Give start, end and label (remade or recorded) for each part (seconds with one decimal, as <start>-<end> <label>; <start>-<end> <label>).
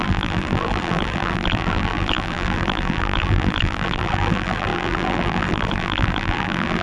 0.0-6.8 remade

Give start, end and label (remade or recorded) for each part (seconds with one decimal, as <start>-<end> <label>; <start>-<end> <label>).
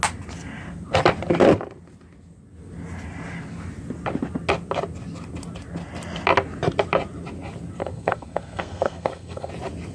0.0-7.8 recorded; 7.8-9.5 remade; 9.5-9.9 recorded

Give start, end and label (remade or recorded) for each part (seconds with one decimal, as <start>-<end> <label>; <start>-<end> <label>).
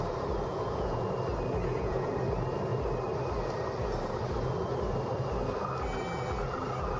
0.0-0.5 recorded; 0.5-1.1 remade; 1.1-1.6 recorded; 1.6-2.1 remade; 2.1-7.0 recorded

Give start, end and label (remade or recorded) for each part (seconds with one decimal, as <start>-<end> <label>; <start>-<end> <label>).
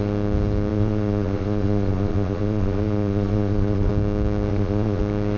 0.0-0.7 recorded; 0.7-3.9 remade; 3.9-4.5 recorded; 4.5-5.0 remade; 5.0-5.4 recorded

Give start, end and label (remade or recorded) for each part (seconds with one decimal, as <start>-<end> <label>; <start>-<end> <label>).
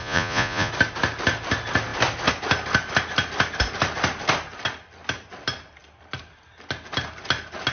0.0-0.7 remade; 0.7-7.7 recorded